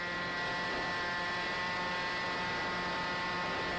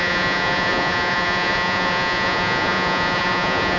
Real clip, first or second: first